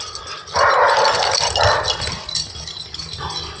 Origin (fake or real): real